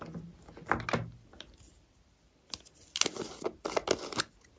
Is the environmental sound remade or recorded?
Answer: recorded